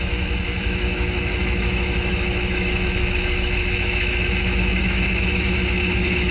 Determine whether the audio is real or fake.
fake